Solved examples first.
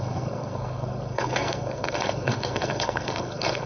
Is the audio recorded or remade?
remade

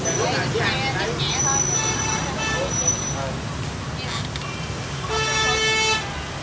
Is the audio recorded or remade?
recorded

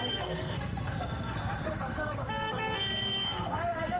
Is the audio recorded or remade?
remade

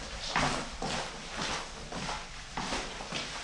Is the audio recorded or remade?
recorded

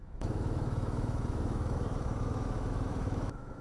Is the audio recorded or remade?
remade